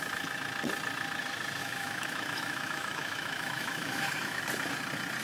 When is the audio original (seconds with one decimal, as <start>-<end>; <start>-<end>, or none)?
0.0-1.6; 4.4-5.2